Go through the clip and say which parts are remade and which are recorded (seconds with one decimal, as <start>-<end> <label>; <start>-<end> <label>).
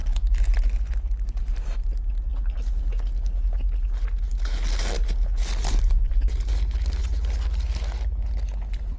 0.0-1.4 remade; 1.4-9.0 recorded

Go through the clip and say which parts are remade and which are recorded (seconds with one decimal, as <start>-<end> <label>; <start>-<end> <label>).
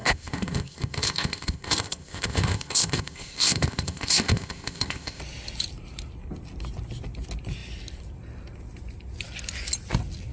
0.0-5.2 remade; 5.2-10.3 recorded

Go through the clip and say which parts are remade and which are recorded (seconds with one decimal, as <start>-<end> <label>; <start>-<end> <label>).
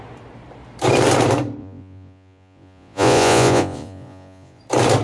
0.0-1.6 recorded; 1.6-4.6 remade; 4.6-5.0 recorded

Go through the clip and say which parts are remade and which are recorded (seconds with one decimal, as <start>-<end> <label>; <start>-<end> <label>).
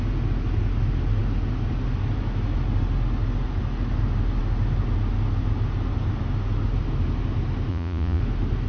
0.0-7.7 recorded; 7.7-8.2 remade; 8.2-8.7 recorded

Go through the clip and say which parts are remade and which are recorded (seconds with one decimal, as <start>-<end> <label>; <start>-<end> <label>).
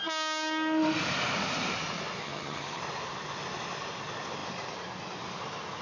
0.0-2.2 recorded; 2.2-2.8 remade; 2.8-5.8 recorded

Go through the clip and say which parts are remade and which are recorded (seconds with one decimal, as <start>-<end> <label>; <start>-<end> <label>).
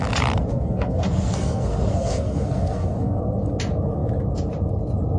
0.0-0.5 recorded; 0.5-3.2 remade; 3.2-5.2 recorded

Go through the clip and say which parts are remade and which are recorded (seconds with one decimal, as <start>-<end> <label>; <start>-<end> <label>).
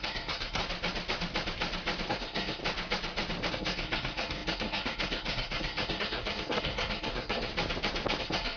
0.0-0.6 remade; 0.6-2.1 recorded; 2.1-2.6 remade; 2.6-3.5 recorded; 3.5-7.5 remade; 7.5-8.2 recorded; 8.2-8.6 remade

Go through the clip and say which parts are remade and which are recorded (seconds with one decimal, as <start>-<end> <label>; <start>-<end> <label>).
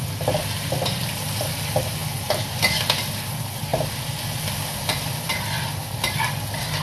0.0-6.8 recorded